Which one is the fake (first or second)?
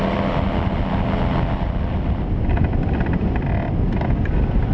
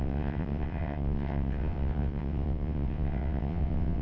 second